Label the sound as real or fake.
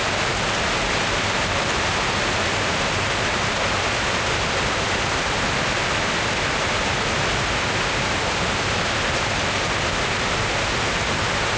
real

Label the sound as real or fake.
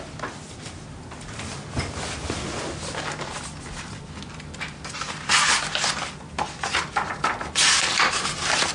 real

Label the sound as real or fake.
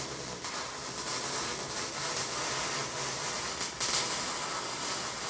real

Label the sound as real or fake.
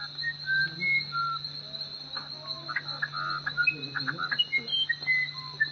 real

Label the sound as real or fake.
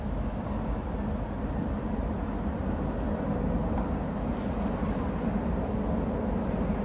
real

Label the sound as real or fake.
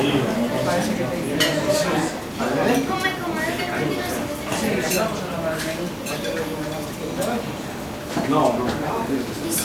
real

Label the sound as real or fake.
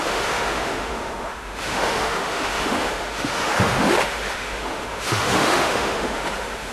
fake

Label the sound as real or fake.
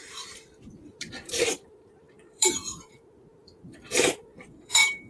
fake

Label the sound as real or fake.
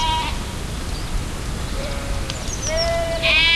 real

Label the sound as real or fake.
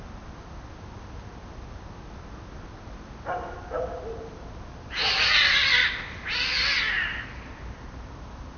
real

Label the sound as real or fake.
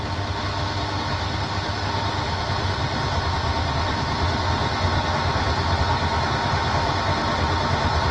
real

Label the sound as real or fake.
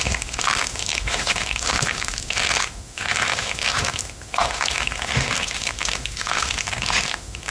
fake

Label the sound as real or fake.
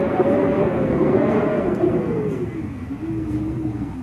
fake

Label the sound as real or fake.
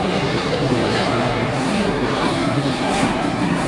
fake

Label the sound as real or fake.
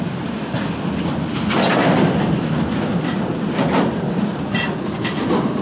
real